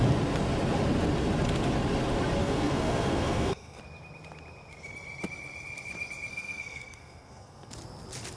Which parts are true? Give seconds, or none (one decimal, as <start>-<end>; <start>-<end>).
0.0-2.4; 3.8-6.3; 7.7-8.4